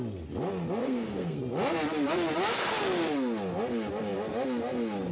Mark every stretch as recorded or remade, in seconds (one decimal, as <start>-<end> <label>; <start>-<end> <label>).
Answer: 0.0-0.8 recorded; 0.8-1.4 remade; 1.4-5.1 recorded